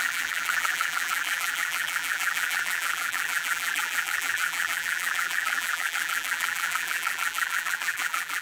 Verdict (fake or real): fake